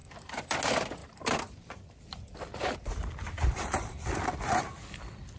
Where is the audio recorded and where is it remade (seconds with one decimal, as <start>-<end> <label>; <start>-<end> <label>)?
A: 0.0-0.6 remade; 0.6-1.0 recorded; 1.0-4.2 remade; 4.2-5.4 recorded